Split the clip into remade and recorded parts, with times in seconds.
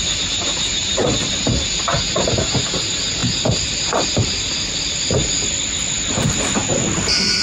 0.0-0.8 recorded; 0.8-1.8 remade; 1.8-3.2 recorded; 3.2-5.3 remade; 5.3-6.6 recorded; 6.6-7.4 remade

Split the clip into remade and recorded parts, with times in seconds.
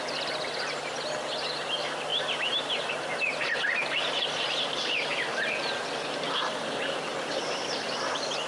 0.0-2.1 recorded; 2.1-2.9 remade; 2.9-7.1 recorded; 7.1-8.5 remade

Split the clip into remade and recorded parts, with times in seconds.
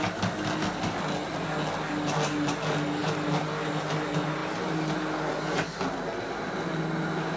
0.0-7.4 recorded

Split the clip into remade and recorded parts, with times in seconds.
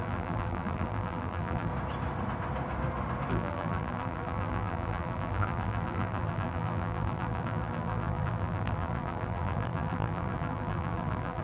0.0-1.7 remade; 1.7-3.3 recorded; 3.3-11.4 remade